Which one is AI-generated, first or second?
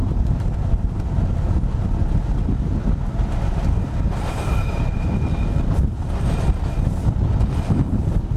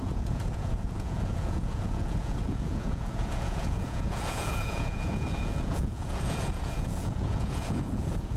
second